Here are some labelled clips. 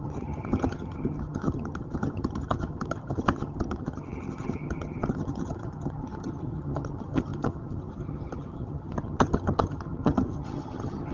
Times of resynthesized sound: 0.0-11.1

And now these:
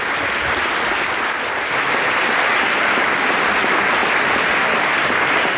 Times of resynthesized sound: none

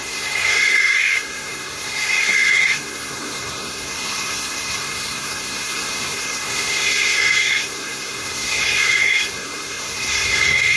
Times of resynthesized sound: 0.0-10.8

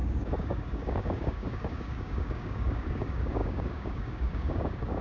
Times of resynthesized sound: 0.0-5.0